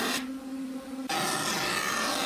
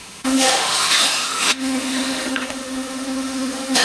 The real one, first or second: first